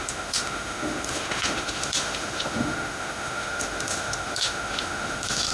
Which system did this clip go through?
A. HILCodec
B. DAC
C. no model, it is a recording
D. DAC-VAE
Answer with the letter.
D